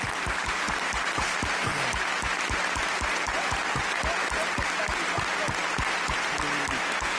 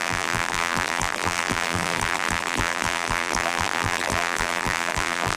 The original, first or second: first